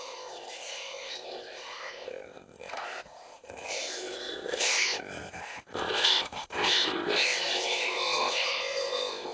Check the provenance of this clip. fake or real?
fake